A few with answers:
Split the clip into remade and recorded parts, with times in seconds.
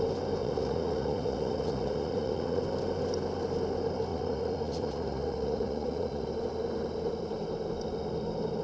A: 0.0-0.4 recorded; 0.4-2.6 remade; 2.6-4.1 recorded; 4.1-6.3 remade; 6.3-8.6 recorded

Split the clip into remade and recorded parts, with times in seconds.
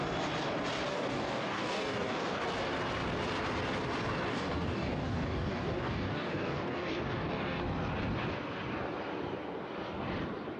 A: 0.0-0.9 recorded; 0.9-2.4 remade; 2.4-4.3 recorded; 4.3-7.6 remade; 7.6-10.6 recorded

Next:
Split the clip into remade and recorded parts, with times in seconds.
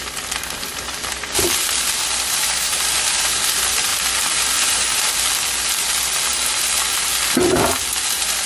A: 0.0-3.9 remade; 3.9-4.4 recorded; 4.4-6.3 remade; 6.3-7.7 recorded; 7.7-8.5 remade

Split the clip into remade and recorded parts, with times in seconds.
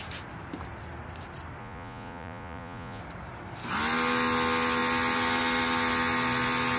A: 0.0-1.6 recorded; 1.6-3.0 remade; 3.0-6.8 recorded